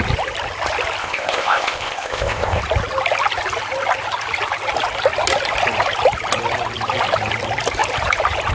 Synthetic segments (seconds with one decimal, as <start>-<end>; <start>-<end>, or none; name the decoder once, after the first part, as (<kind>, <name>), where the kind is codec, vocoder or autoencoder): 1.0-2.6 (codec, ZipCodec)